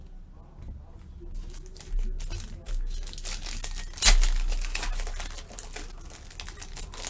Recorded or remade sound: recorded